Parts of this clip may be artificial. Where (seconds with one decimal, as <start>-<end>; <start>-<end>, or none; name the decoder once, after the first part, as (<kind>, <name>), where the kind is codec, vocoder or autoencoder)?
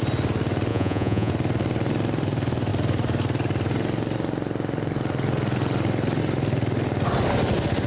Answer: 0.7-1.3 (vocoder, Vocos)